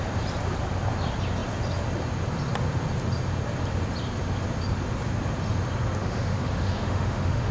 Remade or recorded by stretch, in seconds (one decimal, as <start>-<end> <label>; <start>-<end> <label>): 0.0-6.0 recorded; 6.0-7.5 remade